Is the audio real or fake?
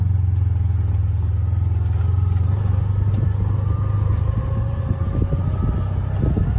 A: real